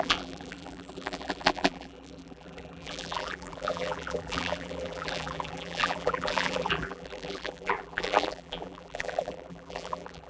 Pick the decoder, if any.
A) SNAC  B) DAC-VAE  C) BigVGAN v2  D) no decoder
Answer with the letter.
C